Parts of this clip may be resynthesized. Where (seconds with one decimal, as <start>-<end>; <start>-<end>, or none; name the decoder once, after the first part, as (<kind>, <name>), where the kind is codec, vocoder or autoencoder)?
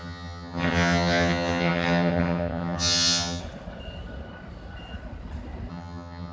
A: 0.0-3.4 (vocoder, HiFi-GAN); 5.7-6.3